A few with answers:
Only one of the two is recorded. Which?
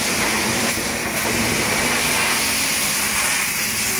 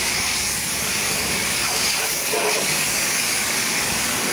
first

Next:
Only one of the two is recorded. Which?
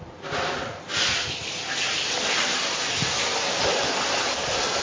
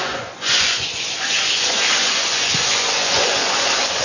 first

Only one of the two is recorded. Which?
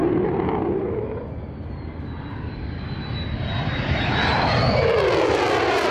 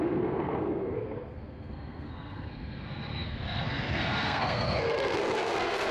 first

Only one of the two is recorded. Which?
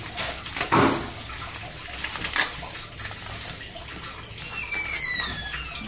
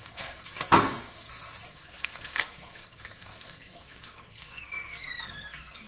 first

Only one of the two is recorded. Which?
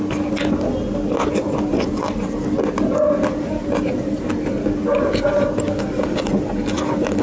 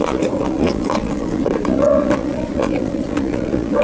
first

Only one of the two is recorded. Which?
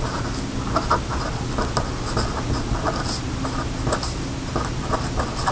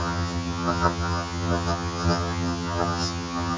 first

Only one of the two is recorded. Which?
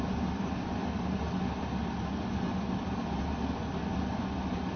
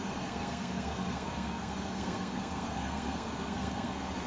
first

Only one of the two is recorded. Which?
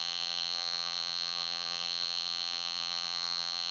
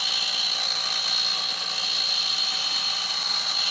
second